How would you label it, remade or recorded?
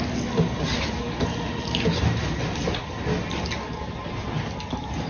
recorded